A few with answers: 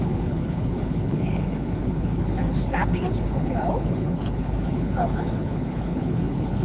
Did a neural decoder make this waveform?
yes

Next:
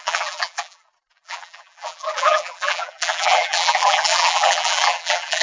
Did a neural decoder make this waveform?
yes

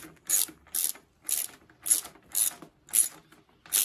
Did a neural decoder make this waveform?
no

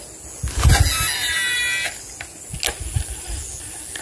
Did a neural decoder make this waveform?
no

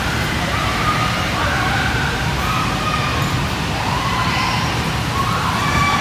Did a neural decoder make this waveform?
yes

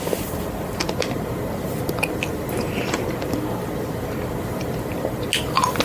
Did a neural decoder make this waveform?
no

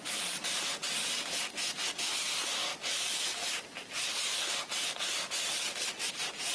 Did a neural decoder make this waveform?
no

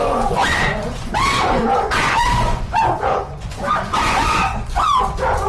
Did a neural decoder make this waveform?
yes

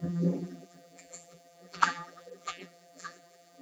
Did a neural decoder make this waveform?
yes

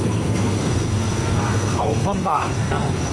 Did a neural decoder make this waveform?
yes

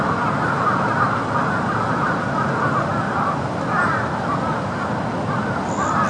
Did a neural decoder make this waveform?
no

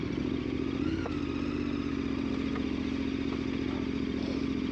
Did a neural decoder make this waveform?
no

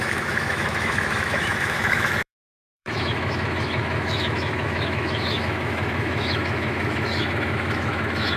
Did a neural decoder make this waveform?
yes